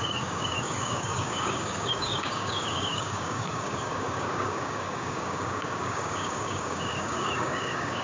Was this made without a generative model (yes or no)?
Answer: no